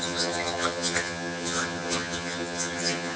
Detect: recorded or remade remade